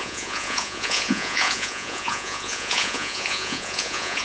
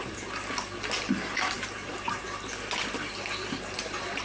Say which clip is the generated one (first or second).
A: first